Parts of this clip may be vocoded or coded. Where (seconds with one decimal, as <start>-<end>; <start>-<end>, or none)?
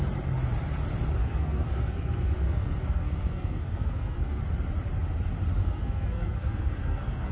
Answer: 1.2-4.4; 5.6-7.3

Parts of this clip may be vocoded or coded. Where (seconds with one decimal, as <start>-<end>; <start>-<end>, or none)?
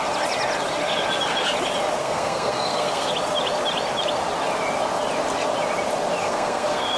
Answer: 2.0-3.1; 6.2-7.0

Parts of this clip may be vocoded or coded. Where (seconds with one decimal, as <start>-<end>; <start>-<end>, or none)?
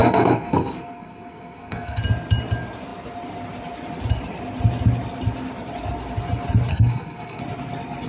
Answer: 0.0-2.0; 6.7-7.4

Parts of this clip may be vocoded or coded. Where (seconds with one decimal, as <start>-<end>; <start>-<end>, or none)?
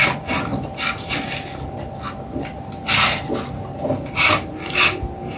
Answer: none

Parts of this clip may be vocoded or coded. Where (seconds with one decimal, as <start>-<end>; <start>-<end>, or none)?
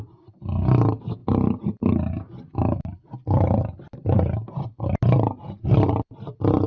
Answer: none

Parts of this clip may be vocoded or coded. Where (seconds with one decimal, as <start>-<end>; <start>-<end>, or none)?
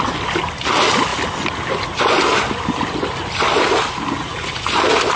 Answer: none